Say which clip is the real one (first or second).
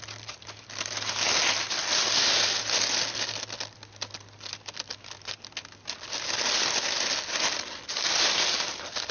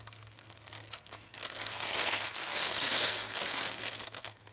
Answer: first